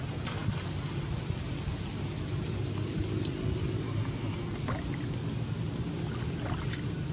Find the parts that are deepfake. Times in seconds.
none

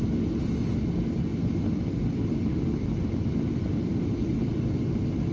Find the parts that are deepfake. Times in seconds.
none

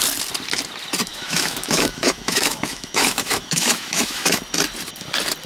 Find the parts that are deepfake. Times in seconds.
1.1-4.4 (autoencoder, DAC-VAE)

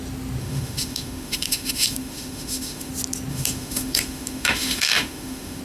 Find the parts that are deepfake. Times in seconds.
0.4-2.9 (autoencoder, DAC-VAE); 3.3-5.6